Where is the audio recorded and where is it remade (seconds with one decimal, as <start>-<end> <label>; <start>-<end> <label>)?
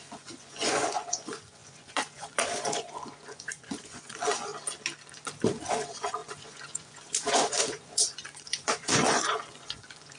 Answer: 0.0-4.5 remade; 4.5-5.7 recorded; 5.7-10.2 remade